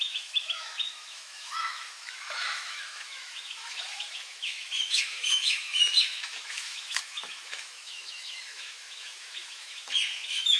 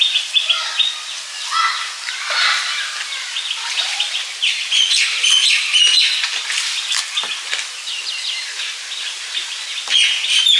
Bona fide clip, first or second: second